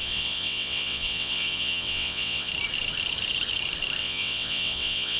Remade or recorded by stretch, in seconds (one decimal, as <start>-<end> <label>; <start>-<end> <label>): 0.0-2.5 remade; 2.5-4.0 recorded; 4.0-5.2 remade